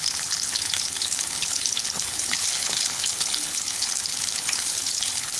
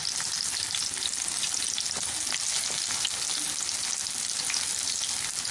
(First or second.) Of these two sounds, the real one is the second